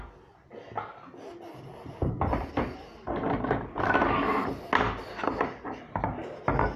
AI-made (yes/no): no